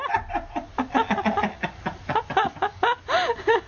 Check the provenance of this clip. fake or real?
real